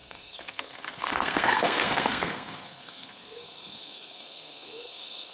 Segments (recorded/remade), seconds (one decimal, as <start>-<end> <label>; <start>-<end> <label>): 0.0-5.3 remade